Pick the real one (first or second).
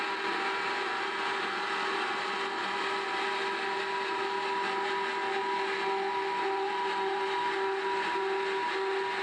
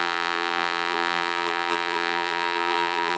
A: first